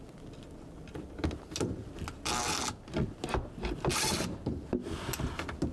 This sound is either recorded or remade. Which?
recorded